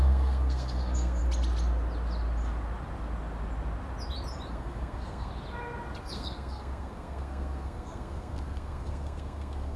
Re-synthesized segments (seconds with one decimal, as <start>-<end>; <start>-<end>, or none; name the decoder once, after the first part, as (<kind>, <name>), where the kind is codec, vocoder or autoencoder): 0.0-1.2 (codec, SNAC); 4.5-5.3; 6.0-9.8